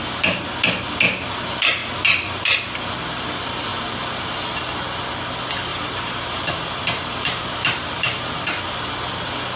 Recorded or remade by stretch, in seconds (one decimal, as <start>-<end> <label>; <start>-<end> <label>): 0.0-5.7 recorded; 5.7-8.8 remade; 8.8-9.6 recorded